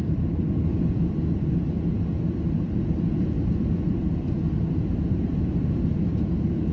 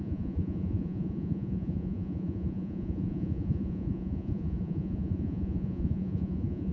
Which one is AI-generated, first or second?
second